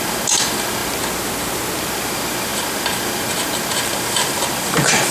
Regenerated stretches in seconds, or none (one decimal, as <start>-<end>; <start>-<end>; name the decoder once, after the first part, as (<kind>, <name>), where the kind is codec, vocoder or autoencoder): none